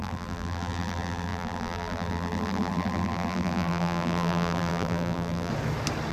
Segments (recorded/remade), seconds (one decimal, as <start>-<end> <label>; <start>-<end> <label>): 0.0-5.5 remade; 5.5-6.1 recorded